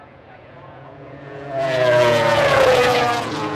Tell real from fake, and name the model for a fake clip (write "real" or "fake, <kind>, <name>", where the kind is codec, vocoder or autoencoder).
fake, vocoder, Vocos